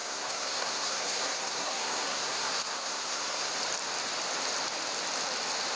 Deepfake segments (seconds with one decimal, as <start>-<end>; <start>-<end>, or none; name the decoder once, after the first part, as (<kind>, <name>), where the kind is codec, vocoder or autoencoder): 0.0-3.5 (codec, SNAC)